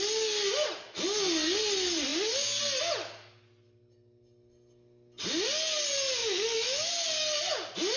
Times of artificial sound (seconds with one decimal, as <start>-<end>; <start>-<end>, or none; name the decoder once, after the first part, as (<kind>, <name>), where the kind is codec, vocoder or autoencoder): 6.2-6.9 (autoencoder, DAC-VAE)